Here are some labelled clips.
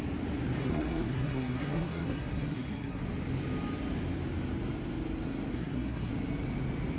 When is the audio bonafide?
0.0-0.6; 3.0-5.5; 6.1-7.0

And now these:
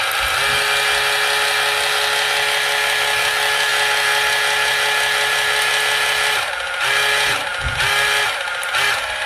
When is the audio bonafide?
0.0-9.3